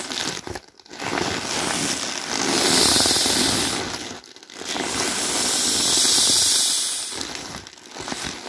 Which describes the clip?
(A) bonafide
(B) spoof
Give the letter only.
A